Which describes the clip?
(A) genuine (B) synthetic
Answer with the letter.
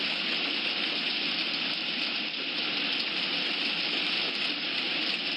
A